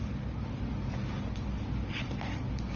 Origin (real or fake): real